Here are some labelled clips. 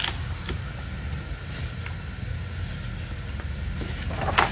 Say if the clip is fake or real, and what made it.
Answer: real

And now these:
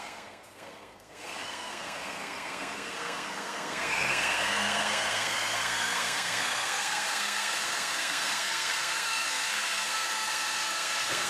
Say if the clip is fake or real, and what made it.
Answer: fake, codec, SNAC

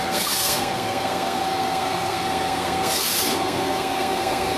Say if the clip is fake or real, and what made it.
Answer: fake, codec, SNAC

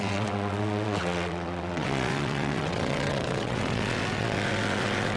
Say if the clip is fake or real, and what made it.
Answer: fake, vocoder, WaveNeXt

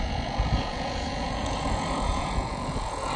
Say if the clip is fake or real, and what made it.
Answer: fake, vocoder, Vocos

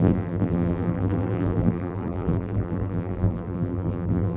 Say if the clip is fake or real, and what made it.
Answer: fake, vocoder, BigVGAN v2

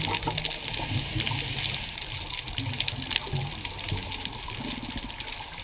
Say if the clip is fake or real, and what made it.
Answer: real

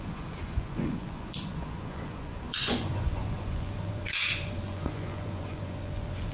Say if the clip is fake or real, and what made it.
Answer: fake, vocoder, Vocos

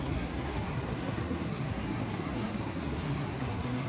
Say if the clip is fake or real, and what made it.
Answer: fake, codec, SNAC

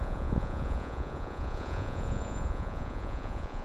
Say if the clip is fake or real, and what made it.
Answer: fake, vocoder, Vocos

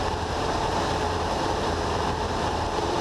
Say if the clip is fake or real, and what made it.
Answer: fake, vocoder, BigVGAN v2